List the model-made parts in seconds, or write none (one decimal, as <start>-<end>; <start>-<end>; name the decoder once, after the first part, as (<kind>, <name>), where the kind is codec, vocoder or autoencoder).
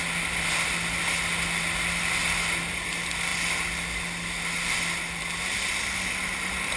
none